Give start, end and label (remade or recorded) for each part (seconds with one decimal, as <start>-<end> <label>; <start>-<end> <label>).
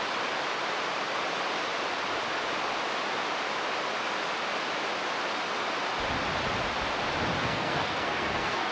0.0-7.4 recorded; 7.4-8.7 remade